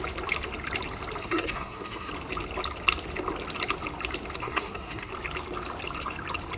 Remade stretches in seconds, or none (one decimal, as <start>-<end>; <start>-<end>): 1.2-2.1; 4.4-5.1